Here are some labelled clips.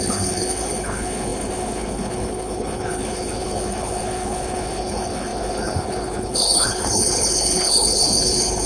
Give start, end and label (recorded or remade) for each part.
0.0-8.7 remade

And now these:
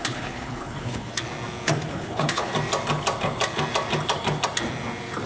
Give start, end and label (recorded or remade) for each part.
0.0-1.1 remade; 1.1-1.9 recorded; 1.9-2.5 remade; 2.5-5.3 recorded

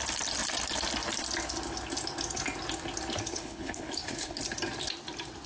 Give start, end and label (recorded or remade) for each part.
0.0-3.3 recorded; 3.3-4.4 remade; 4.4-5.5 recorded

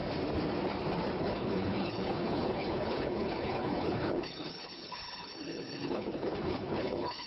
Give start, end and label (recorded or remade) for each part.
0.0-1.2 recorded; 1.2-7.3 remade

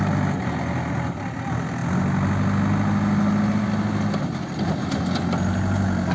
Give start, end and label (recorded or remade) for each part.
0.0-6.1 recorded

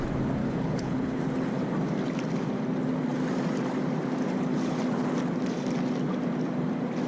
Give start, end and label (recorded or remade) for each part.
0.0-0.4 recorded; 0.4-1.2 remade; 1.2-7.1 recorded

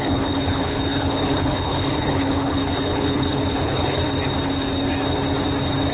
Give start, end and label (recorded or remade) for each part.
0.0-4.0 remade; 4.0-5.9 recorded

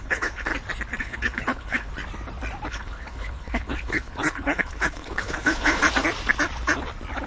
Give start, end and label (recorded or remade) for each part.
0.0-0.5 remade; 0.5-1.0 recorded; 1.0-1.9 remade; 1.9-2.7 recorded; 2.7-5.8 remade; 5.8-7.3 recorded